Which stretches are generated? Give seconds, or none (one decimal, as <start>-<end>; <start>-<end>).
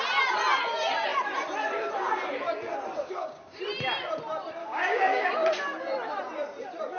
3.0-3.6; 4.6-5.3